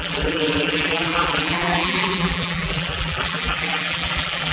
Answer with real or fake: fake